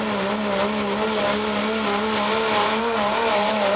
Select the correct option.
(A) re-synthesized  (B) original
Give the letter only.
B